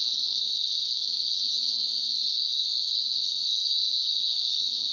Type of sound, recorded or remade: remade